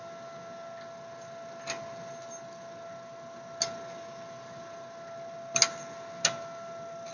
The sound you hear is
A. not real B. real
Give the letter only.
B